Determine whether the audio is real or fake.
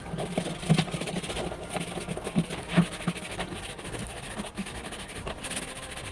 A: real